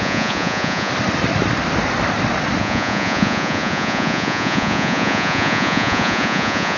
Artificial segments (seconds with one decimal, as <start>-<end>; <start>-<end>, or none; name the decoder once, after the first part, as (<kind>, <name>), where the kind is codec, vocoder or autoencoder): 0.0-0.9 (vocoder, Vocos); 2.6-6.8